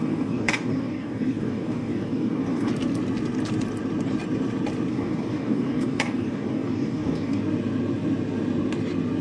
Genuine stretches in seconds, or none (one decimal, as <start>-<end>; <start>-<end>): 2.7-4.9; 7.4-9.2